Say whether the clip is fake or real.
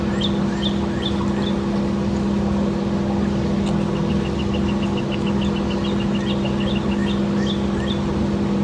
real